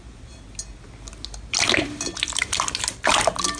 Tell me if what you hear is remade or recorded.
recorded